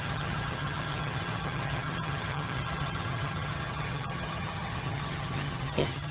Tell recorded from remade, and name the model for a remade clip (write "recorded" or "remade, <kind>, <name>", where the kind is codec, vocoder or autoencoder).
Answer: remade, vocoder, HiFi-GAN